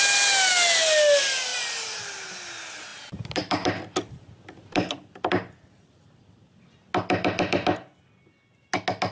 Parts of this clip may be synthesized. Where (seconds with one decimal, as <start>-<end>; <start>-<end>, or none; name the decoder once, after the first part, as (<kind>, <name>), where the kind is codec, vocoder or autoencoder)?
1.5-2.0 (vocoder, BigVGAN v2)